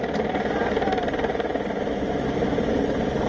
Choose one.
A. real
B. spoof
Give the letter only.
A